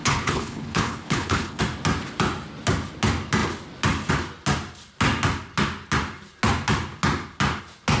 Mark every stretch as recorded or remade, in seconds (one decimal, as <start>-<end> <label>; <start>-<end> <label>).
0.0-1.6 remade; 1.6-8.0 recorded